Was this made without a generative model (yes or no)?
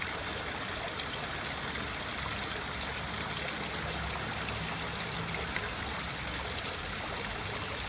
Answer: yes